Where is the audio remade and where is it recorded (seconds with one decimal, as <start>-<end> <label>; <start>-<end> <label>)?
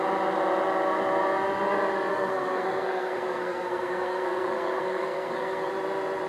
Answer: 0.0-2.1 recorded; 2.1-5.7 remade; 5.7-6.3 recorded